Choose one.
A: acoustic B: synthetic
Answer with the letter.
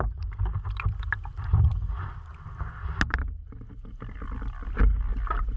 A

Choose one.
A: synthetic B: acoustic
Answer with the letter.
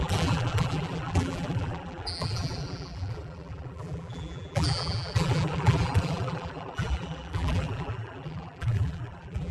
A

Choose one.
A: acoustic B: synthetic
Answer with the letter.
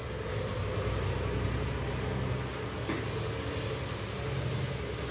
A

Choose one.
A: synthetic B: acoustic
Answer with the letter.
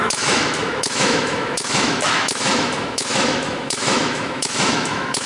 A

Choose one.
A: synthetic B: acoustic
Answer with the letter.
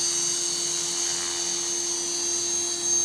B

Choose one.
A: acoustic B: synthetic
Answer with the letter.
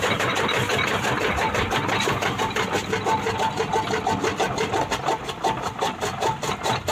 A